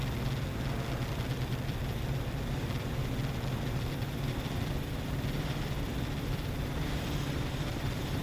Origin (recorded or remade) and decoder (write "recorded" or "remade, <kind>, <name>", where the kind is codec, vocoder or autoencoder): remade, vocoder, BigVGAN v2